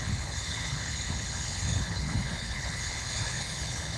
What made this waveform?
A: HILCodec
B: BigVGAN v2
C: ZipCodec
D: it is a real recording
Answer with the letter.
A